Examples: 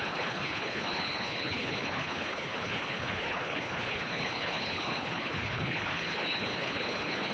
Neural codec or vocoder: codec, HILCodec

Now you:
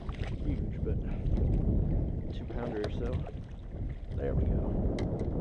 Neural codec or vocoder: none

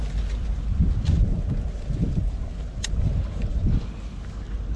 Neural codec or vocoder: none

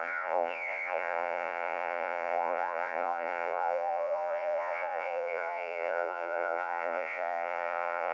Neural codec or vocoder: vocoder, Vocos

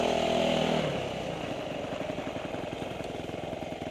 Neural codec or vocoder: none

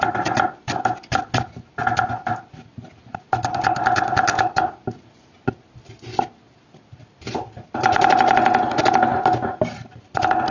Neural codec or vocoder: none